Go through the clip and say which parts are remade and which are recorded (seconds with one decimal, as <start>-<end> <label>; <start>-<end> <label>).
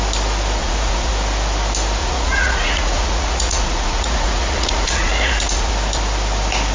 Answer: 0.0-0.6 recorded; 0.6-1.1 remade; 1.1-2.0 recorded; 2.0-5.7 remade; 5.7-6.7 recorded